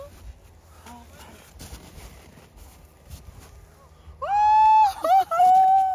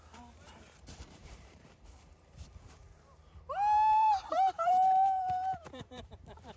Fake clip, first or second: second